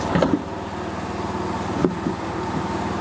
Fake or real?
real